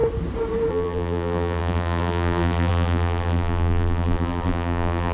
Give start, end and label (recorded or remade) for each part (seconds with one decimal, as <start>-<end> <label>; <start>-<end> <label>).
0.0-0.7 recorded; 0.7-5.1 remade